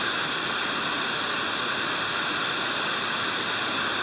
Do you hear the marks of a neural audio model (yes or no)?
no